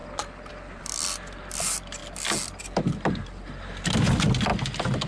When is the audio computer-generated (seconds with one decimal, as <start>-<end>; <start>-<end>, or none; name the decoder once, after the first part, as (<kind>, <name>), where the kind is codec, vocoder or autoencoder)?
0.5-2.0 (vocoder, BigVGAN v2); 2.6-5.1